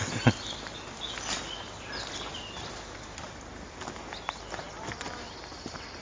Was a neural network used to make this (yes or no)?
no